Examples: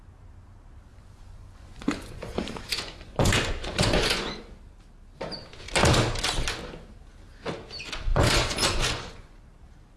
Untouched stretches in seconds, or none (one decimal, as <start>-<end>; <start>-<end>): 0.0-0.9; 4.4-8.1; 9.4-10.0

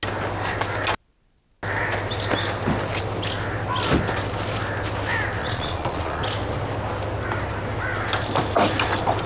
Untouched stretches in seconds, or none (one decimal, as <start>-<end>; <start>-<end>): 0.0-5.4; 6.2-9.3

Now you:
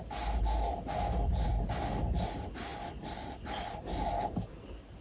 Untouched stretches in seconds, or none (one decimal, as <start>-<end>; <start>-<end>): 0.0-5.0

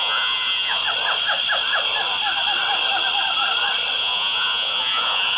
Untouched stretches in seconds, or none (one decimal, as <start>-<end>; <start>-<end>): 0.8-4.0

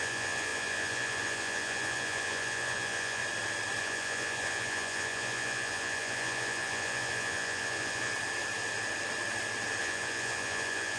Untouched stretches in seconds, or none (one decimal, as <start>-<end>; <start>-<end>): 3.2-3.8; 8.1-9.8

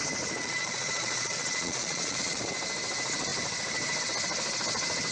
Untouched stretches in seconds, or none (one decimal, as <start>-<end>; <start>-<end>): 0.0-0.4; 2.4-5.1